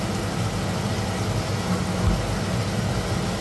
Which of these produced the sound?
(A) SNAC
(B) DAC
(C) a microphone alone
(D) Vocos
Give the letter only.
C